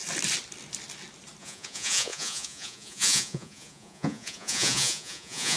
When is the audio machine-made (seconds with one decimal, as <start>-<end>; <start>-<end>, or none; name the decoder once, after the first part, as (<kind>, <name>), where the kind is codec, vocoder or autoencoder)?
1.4-5.6 (vocoder, Vocos)